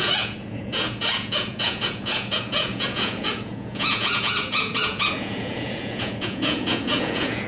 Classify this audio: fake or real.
fake